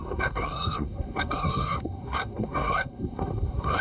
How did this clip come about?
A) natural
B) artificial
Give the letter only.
B